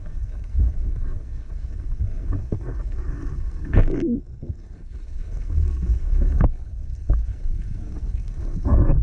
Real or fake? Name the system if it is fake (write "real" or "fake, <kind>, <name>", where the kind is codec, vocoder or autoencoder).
fake, codec, SNAC